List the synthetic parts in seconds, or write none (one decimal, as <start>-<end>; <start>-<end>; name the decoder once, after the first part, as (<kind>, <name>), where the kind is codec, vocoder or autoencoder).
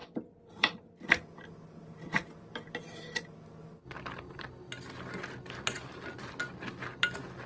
none